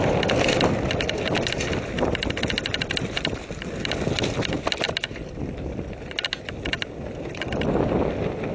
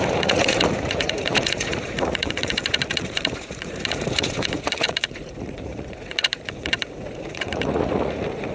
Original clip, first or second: first